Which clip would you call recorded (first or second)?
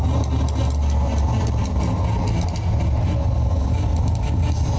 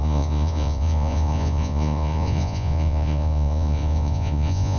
first